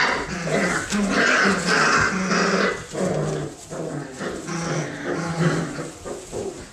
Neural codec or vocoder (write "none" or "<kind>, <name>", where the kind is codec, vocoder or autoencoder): none